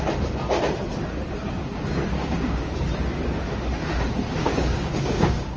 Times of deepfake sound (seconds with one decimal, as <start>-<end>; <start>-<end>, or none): 2.2-2.7; 4.4-5.6